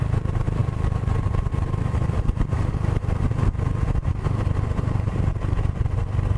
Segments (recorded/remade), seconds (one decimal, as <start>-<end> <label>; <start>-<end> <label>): 0.0-6.4 remade